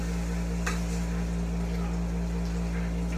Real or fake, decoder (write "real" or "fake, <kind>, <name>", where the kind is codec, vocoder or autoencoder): real